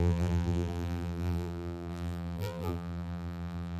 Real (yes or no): no